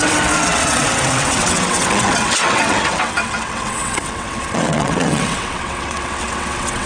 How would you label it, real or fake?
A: fake